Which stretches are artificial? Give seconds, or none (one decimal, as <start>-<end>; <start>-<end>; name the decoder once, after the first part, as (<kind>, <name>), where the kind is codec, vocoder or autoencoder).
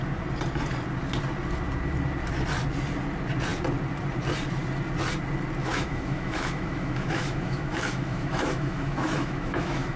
5.6-10.0 (autoencoder, DAC-VAE)